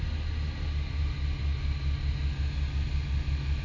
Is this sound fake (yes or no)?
no